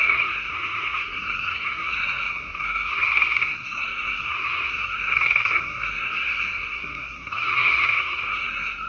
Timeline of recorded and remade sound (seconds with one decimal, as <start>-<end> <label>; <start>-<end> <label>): 0.0-8.9 remade